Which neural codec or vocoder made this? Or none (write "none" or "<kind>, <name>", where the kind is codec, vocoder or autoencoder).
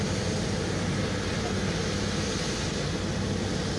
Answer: none